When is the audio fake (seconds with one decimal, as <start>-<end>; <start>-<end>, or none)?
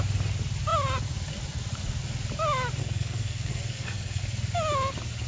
2.8-4.2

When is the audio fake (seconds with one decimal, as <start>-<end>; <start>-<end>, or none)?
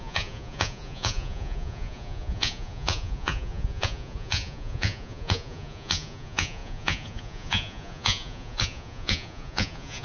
0.0-10.0